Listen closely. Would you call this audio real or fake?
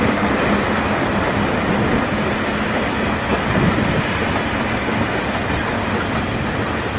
real